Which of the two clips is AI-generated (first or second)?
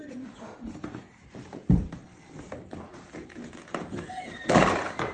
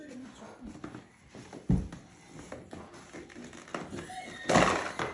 first